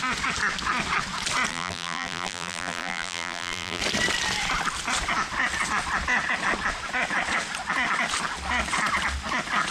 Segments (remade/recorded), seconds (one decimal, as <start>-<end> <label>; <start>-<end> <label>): 0.0-1.5 recorded; 1.5-3.8 remade; 3.8-9.7 recorded